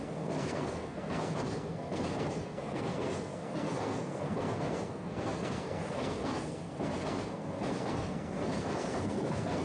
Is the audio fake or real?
fake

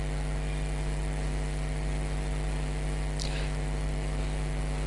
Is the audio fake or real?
real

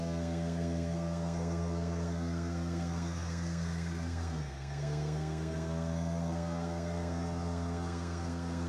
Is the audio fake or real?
fake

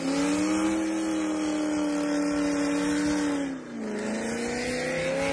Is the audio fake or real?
real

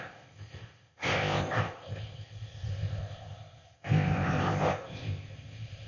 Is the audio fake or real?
fake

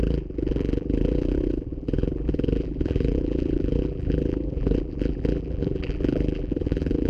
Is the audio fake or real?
fake